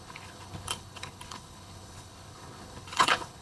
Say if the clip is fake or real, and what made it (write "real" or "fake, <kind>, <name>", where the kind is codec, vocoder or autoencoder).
fake, codec, HILCodec